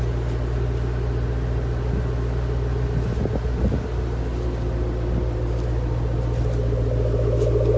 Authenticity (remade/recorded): recorded